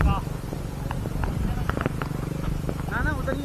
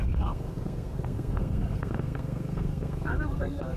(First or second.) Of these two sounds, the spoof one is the second